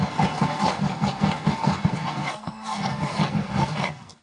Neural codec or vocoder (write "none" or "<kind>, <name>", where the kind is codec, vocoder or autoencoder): codec, SNAC